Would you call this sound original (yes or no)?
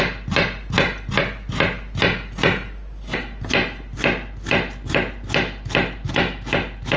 yes